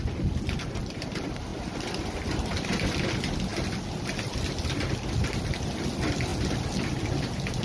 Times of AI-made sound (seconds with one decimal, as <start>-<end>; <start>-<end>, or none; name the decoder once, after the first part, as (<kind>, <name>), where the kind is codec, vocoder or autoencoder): none